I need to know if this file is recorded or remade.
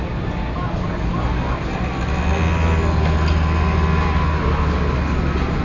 recorded